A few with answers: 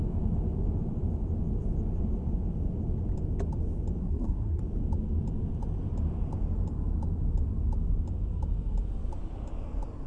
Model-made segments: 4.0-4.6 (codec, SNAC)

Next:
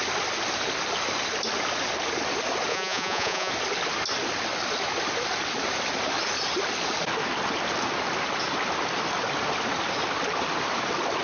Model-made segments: 2.7-3.5 (vocoder, Vocos)

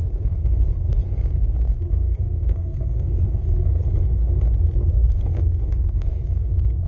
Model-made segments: 0.0-3.6 (codec, SNAC); 4.9-6.9

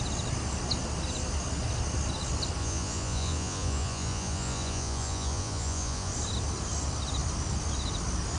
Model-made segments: 2.6-6.1 (vocoder, Vocos)

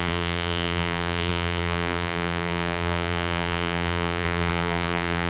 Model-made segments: 0.0-5.3 (vocoder, BigVGAN v2)

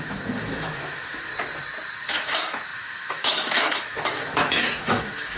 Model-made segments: 0.0-1.3 (autoencoder, DAC-VAE); 2.0-5.4

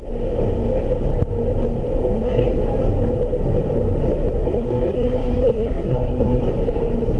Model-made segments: 2.0-2.5 (codec, SNAC); 4.4-6.4

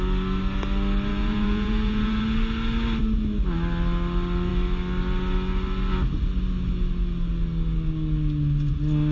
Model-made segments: 1.1-2.2 (vocoder, Vocos)